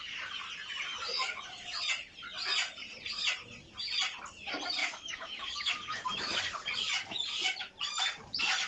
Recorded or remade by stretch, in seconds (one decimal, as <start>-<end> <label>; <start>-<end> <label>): 0.0-0.9 recorded; 0.9-1.8 remade; 1.8-4.8 recorded; 4.8-6.4 remade; 6.4-8.7 recorded